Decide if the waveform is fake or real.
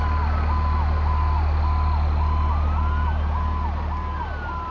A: real